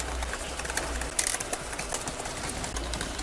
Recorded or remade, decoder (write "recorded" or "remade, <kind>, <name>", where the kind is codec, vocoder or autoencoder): recorded